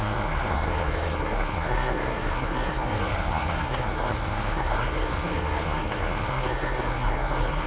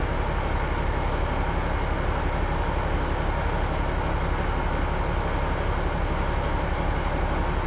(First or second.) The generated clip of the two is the first